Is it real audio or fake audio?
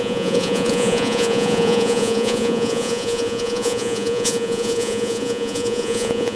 fake